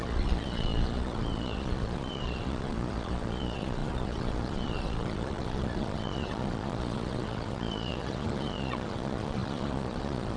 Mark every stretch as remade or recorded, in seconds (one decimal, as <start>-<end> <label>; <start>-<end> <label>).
0.0-10.4 remade